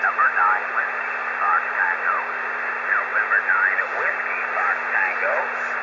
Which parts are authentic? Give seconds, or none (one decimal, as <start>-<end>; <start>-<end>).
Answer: 0.0-5.8